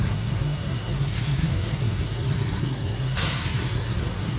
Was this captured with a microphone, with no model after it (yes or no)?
no